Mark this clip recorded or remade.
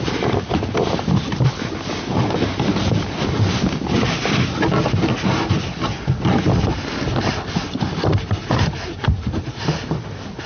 recorded